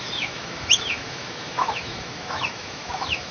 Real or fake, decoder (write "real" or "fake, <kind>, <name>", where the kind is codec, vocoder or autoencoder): fake, autoencoder, DAC-VAE